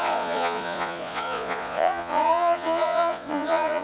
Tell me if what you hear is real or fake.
fake